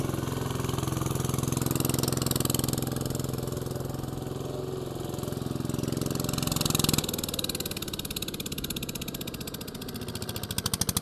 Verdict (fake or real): real